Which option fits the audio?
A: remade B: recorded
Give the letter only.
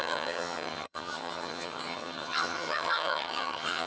A